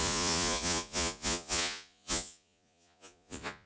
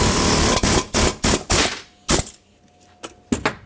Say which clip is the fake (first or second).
first